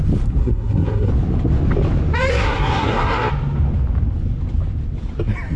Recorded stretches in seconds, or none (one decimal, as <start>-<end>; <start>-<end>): 0.0-0.4; 1.1-2.3; 3.3-5.6